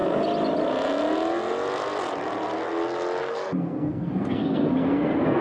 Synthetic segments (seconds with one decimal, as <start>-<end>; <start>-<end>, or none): 3.2-5.4